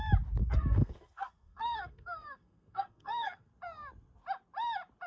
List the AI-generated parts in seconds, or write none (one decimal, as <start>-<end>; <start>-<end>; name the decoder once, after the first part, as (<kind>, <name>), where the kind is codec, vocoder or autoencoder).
0.4-3.5 (codec, SNAC)